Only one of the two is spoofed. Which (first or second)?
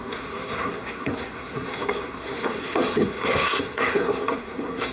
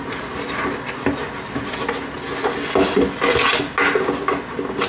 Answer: first